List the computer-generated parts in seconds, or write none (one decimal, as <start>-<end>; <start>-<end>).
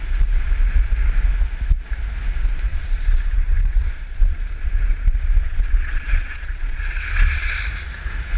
2.7-7.6